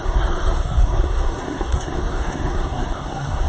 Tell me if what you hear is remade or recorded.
remade